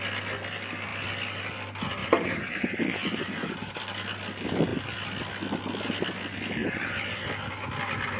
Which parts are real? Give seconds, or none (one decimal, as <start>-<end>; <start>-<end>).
0.0-2.0; 3.8-6.6; 7.2-8.2